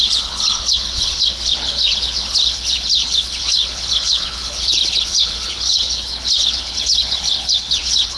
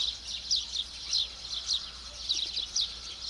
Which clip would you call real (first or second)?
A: second